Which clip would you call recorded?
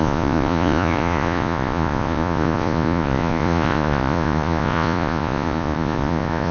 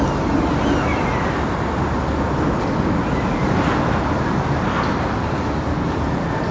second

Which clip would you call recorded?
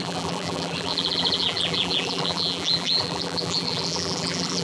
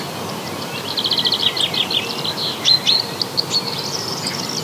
second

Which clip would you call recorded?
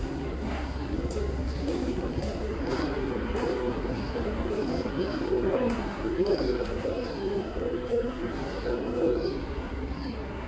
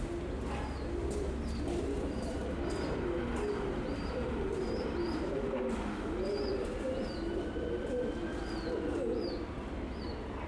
second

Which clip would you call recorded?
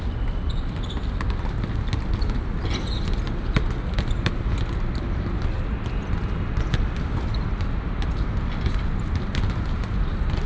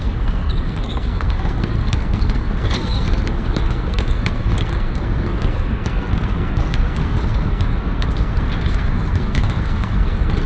first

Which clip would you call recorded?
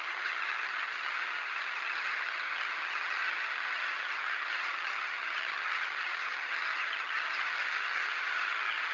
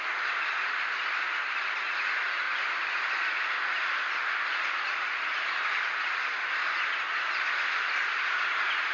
second